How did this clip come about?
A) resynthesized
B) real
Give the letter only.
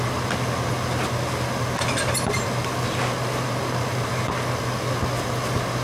B